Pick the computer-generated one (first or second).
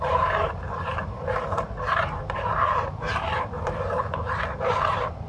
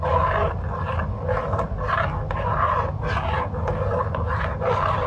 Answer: first